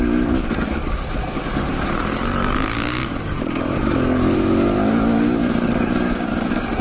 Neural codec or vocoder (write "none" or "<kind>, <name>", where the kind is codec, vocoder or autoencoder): codec, DAC